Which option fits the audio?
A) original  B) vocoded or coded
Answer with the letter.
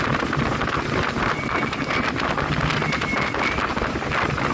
A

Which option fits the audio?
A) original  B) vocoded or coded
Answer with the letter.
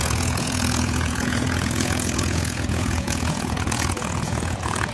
B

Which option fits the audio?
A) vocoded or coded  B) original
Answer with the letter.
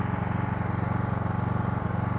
B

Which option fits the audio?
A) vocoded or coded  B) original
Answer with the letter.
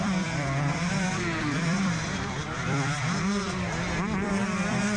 A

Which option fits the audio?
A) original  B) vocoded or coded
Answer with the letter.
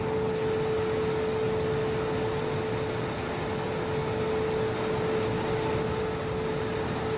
A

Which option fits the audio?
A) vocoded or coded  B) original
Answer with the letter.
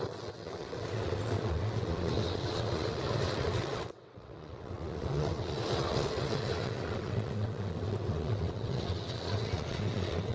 A